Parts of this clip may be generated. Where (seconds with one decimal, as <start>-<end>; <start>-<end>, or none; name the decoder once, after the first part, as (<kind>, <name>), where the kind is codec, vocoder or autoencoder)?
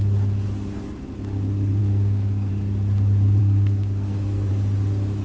1.8-2.5 (codec, SNAC); 3.4-4.5